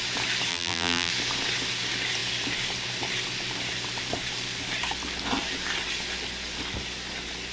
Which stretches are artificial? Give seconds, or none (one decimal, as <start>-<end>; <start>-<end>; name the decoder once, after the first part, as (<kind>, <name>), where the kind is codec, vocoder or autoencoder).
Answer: 0.5-1.1 (vocoder, BigVGAN v2)